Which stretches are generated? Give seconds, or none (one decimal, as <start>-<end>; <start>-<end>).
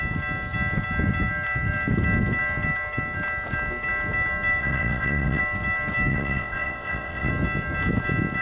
4.6-5.4; 6.1-7.3